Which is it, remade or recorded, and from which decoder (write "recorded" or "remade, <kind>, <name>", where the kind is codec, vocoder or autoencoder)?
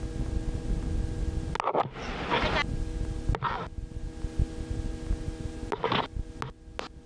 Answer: recorded